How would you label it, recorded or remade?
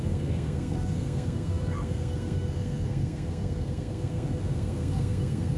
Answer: remade